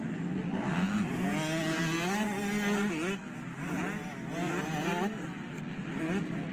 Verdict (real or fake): real